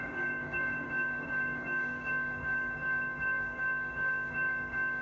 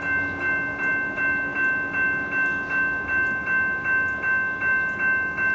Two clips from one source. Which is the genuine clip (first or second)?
second